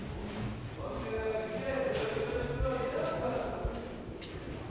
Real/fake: real